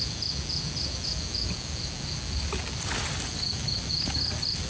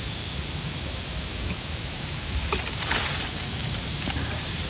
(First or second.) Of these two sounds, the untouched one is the first